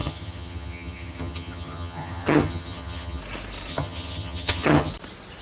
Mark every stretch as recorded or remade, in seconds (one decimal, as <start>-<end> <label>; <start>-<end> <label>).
0.0-3.2 remade; 3.2-3.7 recorded; 3.7-4.9 remade; 4.9-5.4 recorded